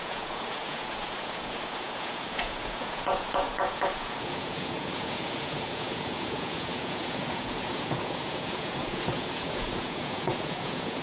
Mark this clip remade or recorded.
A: remade